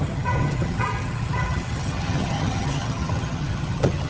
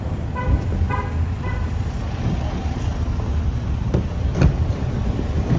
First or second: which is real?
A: second